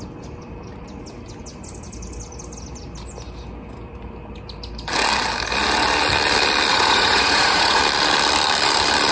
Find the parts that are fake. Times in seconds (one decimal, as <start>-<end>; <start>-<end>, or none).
6.7-7.8